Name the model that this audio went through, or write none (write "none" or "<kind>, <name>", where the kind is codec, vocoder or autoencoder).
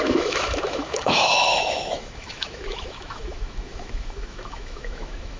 autoencoder, DAC-VAE